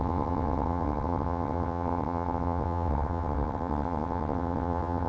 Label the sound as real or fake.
fake